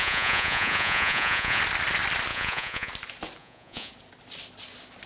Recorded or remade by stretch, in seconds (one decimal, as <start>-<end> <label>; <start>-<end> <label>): 0.0-1.6 remade; 1.6-2.3 recorded; 2.3-2.9 remade; 2.9-3.4 recorded; 3.4-3.9 remade; 3.9-5.1 recorded